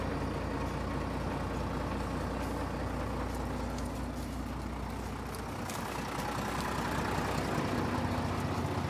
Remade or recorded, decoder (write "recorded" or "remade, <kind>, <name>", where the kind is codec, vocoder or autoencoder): recorded